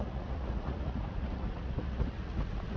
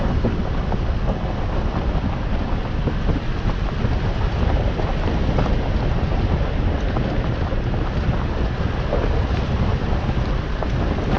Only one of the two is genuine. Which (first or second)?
second